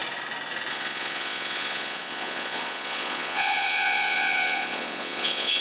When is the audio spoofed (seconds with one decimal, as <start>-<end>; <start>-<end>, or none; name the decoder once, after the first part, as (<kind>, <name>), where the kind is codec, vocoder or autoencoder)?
0.7-5.6 (vocoder, Vocos)